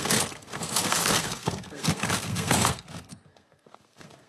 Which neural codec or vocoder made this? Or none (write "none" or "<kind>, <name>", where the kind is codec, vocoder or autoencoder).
codec, SNAC